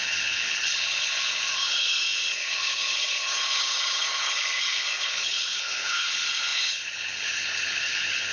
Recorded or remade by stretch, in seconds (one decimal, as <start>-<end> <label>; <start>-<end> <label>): 0.0-8.3 remade